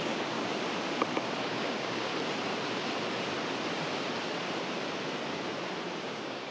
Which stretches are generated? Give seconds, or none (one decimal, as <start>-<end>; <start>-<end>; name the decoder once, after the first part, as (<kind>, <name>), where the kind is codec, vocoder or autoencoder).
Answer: 0.0-0.5 (codec, DAC); 1.4-2.1; 6.0-6.5